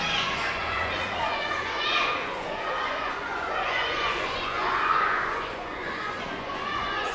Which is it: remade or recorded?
remade